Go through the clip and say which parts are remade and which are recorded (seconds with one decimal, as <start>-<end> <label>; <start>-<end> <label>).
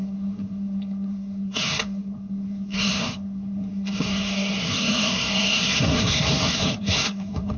0.0-7.6 remade